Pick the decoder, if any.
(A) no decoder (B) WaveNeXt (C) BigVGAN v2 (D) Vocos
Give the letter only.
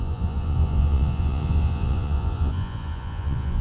D